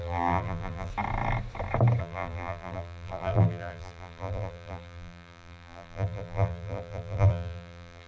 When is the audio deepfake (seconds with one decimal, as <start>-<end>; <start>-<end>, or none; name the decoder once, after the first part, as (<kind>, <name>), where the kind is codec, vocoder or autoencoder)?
0.0-0.9 (vocoder, BigVGAN v2); 2.0-8.1